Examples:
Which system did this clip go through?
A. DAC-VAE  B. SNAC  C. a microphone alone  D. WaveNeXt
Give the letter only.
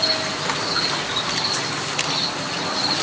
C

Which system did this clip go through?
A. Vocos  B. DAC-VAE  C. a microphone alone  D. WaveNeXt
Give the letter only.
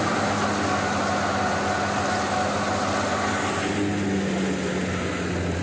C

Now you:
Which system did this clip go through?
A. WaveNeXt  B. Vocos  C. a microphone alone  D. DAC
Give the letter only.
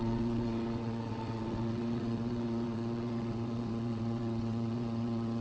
A